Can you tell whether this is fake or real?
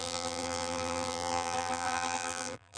fake